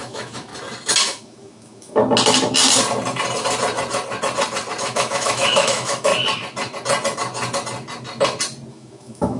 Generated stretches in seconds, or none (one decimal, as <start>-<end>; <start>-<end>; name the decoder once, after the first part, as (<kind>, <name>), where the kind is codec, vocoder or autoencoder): 0.0-0.5 (autoencoder, DAC-VAE); 1.0-2.0; 4.8-6.1; 8.7-9.4